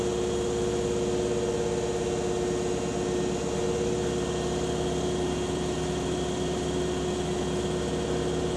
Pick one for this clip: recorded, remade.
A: recorded